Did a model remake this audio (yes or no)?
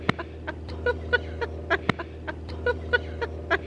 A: no